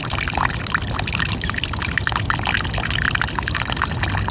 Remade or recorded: recorded